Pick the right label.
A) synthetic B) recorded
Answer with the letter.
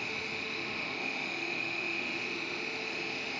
A